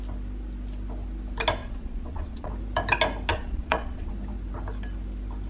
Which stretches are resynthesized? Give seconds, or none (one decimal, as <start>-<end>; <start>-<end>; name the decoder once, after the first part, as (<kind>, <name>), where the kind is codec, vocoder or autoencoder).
1.6-2.5 (vocoder, Vocos); 3.3-4.1